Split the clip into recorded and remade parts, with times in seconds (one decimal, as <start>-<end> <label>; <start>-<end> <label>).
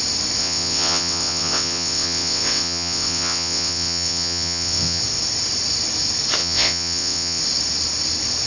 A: 0.0-0.4 recorded; 0.4-5.0 remade; 5.0-6.4 recorded; 6.4-7.4 remade; 7.4-8.5 recorded